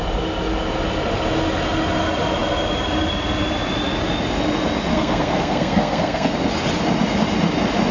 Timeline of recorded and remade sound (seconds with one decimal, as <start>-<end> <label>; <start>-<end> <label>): 0.0-4.9 recorded; 4.9-6.3 remade; 6.3-7.9 recorded